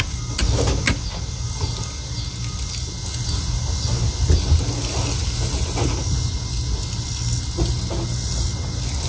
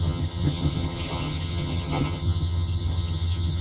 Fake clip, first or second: second